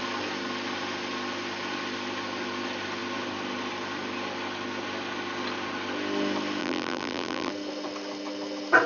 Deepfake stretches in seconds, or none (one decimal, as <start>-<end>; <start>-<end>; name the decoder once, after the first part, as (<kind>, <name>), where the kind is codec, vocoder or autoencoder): 6.6-7.5 (vocoder, BigVGAN v2)